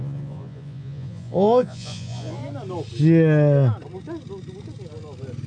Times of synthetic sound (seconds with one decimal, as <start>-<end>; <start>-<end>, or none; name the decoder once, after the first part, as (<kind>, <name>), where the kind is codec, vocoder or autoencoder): 0.0-2.4 (vocoder, Vocos)